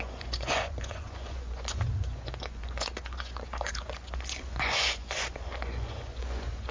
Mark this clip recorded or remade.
remade